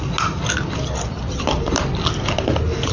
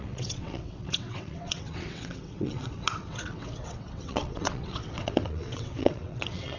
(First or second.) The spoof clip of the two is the second